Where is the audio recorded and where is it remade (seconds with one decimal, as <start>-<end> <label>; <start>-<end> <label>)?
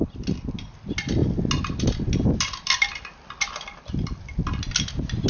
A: 0.0-5.3 recorded